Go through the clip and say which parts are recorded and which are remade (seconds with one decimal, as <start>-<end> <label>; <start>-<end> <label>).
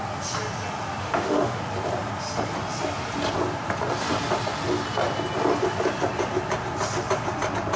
0.0-1.0 recorded; 1.0-1.6 remade; 1.6-7.8 recorded